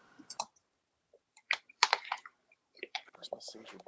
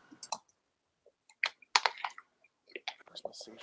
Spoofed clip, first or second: first